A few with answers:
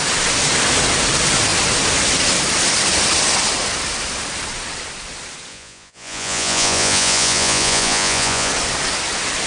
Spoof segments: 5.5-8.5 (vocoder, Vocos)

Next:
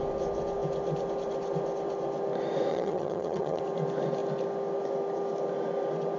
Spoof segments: 2.7-3.6 (vocoder, HiFi-GAN)

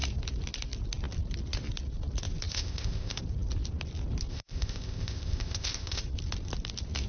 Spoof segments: 2.5-3.2 (codec, ZipCodec); 4.3-6.0

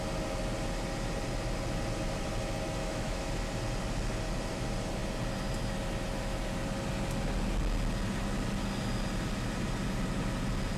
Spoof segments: 2.8-3.3 (autoencoder, DAC-VAE)